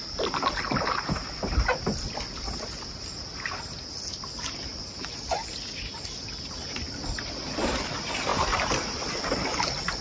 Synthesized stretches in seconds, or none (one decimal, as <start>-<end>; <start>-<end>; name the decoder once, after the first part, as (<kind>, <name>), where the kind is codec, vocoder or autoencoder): none